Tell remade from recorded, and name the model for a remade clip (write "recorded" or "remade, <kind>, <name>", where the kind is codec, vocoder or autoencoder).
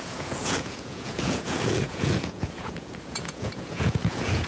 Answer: remade, vocoder, Vocos